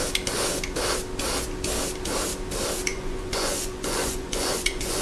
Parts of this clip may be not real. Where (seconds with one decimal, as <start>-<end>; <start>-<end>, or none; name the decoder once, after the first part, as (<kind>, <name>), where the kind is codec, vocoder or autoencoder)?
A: 2.9-5.0 (vocoder, Vocos)